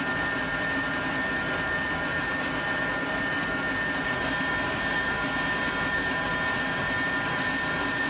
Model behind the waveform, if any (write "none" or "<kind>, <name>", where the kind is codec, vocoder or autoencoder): none